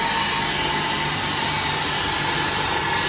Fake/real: real